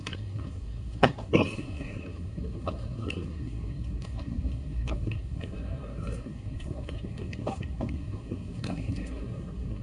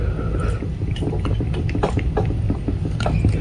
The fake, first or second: first